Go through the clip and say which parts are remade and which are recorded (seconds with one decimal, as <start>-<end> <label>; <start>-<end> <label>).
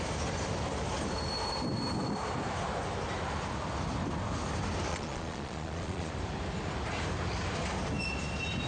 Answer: 0.0-4.9 recorded; 4.9-6.1 remade; 6.1-8.7 recorded